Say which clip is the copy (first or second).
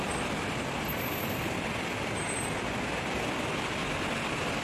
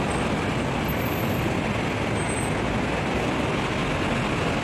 first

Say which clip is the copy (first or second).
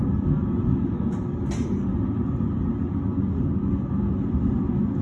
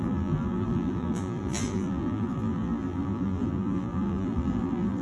second